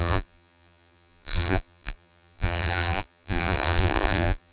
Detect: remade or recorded remade